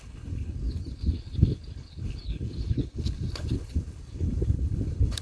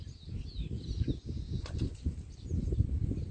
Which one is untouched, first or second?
second